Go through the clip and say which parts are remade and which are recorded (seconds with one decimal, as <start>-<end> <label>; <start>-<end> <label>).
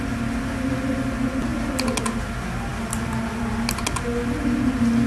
0.0-5.1 recorded